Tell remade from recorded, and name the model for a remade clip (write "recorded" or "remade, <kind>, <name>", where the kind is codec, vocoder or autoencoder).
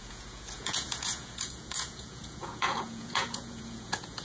remade, vocoder, Vocos